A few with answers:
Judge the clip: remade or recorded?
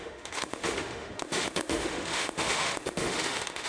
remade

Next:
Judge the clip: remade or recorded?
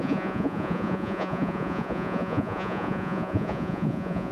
remade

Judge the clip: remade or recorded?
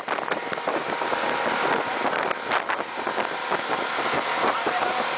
recorded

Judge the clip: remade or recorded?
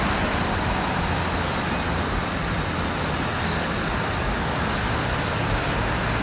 recorded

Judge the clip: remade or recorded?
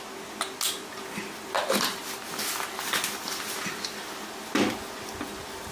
recorded